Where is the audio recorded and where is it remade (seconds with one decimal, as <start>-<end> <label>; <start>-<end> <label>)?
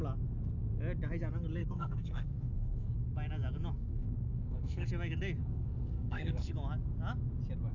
0.0-1.6 recorded; 1.6-2.9 remade; 2.9-3.8 recorded; 3.8-4.9 remade; 4.9-5.4 recorded; 5.4-6.5 remade; 6.5-7.7 recorded